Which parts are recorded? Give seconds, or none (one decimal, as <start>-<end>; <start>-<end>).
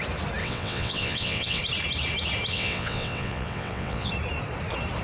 0.0-0.4; 1.6-2.5; 4.1-5.0